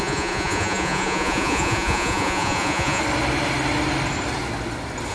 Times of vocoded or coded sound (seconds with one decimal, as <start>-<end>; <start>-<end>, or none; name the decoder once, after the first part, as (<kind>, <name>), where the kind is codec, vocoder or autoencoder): 0.0-3.0 (vocoder, Vocos)